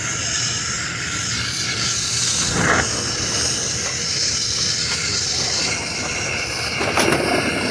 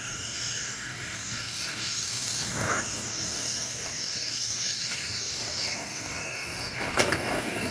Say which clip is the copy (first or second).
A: second